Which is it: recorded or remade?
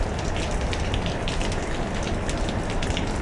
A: recorded